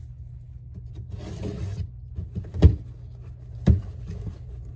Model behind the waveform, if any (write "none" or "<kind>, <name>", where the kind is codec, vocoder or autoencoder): none